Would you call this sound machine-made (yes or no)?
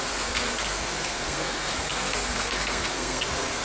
yes